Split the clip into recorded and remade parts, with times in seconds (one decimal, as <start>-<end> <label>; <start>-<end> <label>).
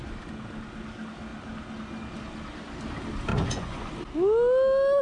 0.0-3.3 recorded; 3.3-3.9 remade; 3.9-5.0 recorded